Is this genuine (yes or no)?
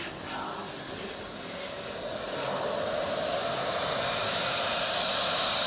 yes